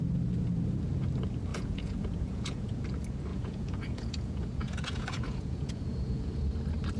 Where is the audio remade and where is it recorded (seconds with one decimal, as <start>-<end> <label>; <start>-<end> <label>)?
0.0-1.5 recorded; 1.5-2.7 remade; 2.7-3.3 recorded; 3.3-6.5 remade; 6.5-7.0 recorded